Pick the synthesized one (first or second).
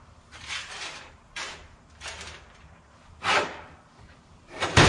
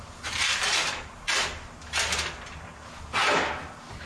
first